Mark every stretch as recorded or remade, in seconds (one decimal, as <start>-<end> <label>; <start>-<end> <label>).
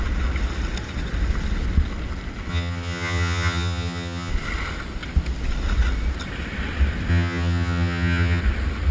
0.0-2.5 recorded; 2.5-4.3 remade; 4.3-7.1 recorded; 7.1-8.4 remade; 8.4-8.9 recorded